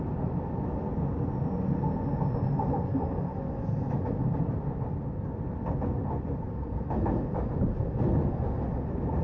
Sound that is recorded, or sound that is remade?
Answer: recorded